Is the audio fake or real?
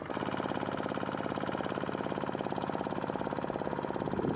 real